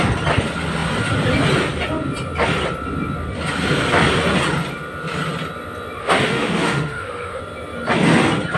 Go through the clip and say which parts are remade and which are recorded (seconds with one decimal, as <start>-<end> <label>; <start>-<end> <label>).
0.0-6.0 recorded; 6.0-7.4 remade; 7.4-8.6 recorded

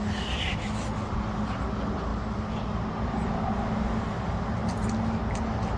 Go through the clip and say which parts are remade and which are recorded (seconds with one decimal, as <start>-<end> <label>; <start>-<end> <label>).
0.0-5.8 recorded

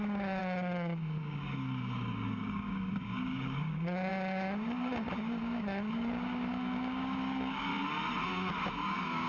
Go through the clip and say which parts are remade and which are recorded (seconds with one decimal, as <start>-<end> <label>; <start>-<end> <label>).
0.0-7.7 remade; 7.7-8.3 recorded; 8.3-9.3 remade

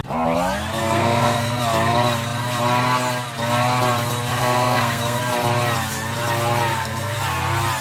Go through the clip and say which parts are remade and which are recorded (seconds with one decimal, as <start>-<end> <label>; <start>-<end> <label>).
0.0-0.8 recorded; 0.8-1.6 remade; 1.6-4.3 recorded; 4.3-5.2 remade; 5.2-6.7 recorded; 6.7-7.2 remade; 7.2-7.8 recorded